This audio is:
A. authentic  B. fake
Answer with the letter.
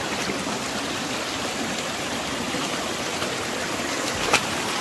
A